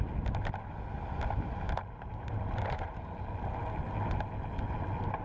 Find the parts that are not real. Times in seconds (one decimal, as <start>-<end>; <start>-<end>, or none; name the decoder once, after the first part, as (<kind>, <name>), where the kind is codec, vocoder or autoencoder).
1.8-3.1 (vocoder, BigVGAN v2)